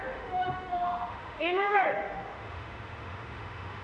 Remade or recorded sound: remade